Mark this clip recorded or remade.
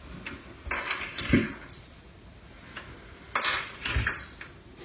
recorded